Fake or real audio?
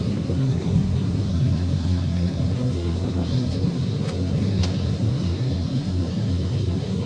fake